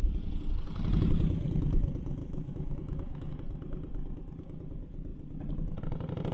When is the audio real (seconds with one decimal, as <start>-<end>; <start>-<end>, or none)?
0.0-2.2; 3.3-6.3